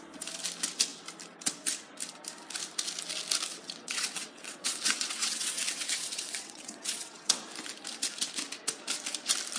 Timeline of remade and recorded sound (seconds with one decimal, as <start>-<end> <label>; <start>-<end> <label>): 0.0-3.5 recorded; 3.5-7.4 remade; 7.4-9.6 recorded